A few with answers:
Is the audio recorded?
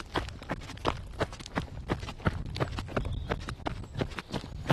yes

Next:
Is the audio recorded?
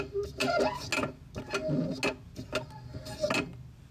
yes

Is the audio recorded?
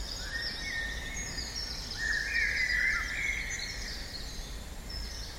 yes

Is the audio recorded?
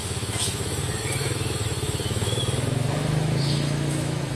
no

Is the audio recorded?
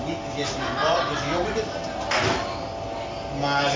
yes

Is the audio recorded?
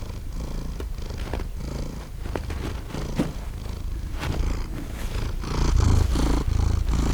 yes